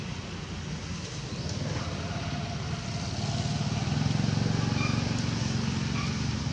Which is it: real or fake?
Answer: real